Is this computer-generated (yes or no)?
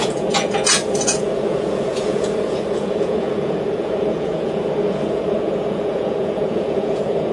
yes